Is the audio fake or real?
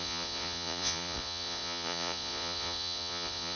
fake